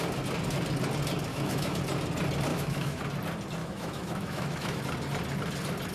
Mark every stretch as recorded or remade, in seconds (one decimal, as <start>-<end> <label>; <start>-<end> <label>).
0.0-1.3 recorded; 1.3-1.8 remade; 1.8-2.5 recorded; 2.5-3.0 remade; 3.0-3.6 recorded; 3.6-4.8 remade; 4.8-5.9 recorded